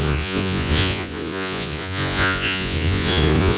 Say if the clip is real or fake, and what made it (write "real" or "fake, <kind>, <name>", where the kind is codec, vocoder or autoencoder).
fake, vocoder, Vocos